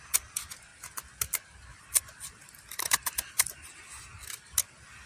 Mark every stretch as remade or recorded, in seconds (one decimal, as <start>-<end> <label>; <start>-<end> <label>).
0.0-5.1 recorded